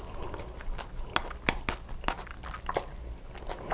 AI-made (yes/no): no